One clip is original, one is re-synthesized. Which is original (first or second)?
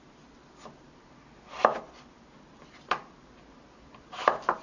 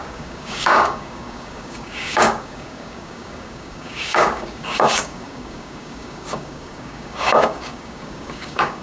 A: first